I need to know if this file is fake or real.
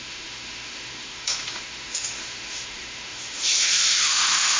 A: fake